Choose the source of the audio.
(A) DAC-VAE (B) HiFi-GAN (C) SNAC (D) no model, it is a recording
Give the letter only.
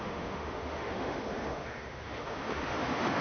A